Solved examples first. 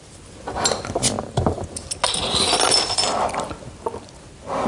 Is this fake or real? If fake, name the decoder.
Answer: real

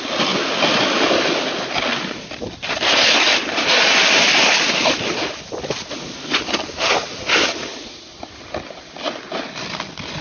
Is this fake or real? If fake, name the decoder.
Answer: real